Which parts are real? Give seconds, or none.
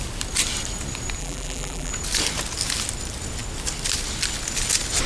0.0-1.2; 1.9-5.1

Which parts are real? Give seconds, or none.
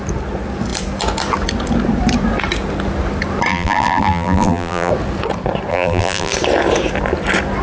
0.0-3.5; 4.9-5.7; 6.3-7.6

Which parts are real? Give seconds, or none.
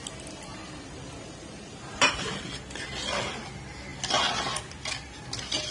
0.0-0.5; 2.1-5.7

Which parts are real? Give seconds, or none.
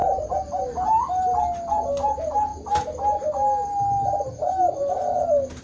0.6-5.6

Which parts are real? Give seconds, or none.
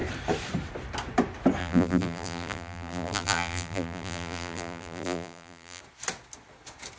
0.0-1.6; 5.8-7.0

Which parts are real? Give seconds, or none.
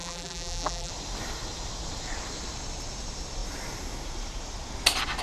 0.9-5.2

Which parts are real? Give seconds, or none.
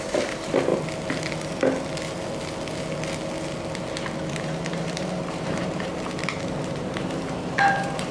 0.7-4.3; 5.9-6.6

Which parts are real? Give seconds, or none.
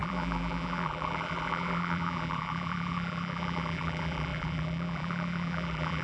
none